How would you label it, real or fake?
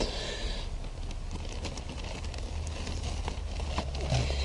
real